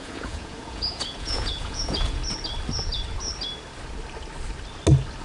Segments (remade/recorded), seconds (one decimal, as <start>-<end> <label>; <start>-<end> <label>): 0.0-2.2 remade; 2.2-5.2 recorded